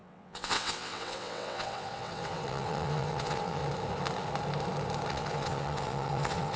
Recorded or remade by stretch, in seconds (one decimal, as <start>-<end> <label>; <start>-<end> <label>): 0.0-3.6 remade; 3.6-5.1 recorded; 5.1-6.6 remade

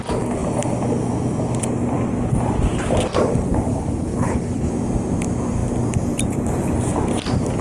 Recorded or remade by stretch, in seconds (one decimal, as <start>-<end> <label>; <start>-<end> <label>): 0.0-3.7 recorded; 3.7-4.7 remade; 4.7-7.6 recorded

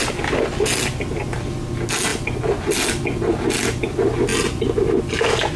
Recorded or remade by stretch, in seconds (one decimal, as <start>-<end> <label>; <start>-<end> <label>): 0.0-5.6 recorded